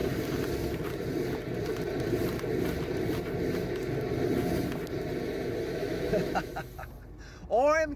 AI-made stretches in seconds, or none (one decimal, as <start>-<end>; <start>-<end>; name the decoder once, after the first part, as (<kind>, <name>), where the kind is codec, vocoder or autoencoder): 5.8-6.5 (autoencoder, DAC-VAE)